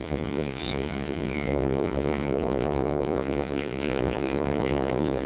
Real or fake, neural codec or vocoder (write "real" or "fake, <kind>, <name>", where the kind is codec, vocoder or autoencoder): fake, vocoder, Vocos